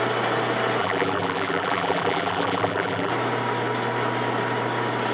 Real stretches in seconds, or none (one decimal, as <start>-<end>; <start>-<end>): 0.0-0.8; 3.1-5.1